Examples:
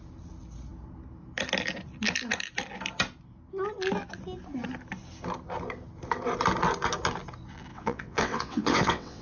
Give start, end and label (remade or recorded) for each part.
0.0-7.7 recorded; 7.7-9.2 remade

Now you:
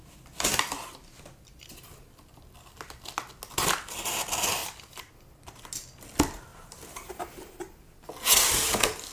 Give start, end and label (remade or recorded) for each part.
0.0-6.5 recorded; 6.5-7.3 remade; 7.3-9.1 recorded

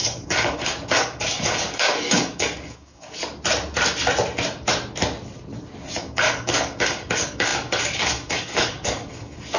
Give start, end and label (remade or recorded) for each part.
0.0-3.2 remade; 3.2-6.0 recorded; 6.0-9.6 remade